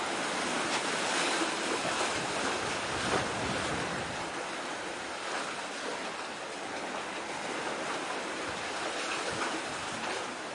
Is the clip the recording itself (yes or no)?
yes